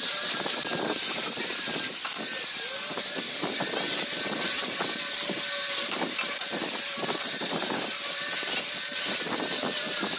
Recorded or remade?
remade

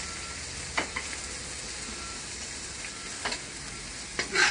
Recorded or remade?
recorded